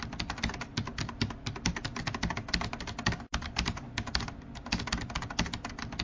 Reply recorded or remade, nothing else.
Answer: recorded